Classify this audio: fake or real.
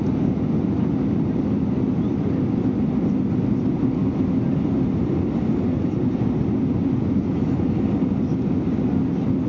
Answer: real